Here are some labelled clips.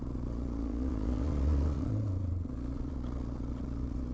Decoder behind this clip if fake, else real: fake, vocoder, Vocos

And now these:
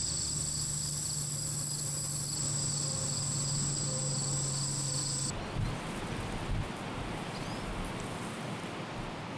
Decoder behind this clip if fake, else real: real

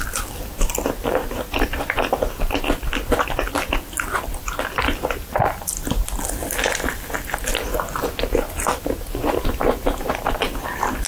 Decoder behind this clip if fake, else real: real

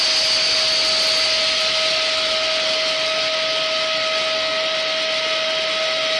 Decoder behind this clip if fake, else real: real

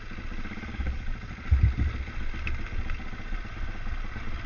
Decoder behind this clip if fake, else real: real